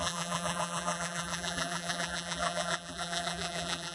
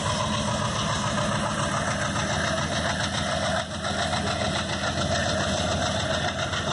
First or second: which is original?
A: second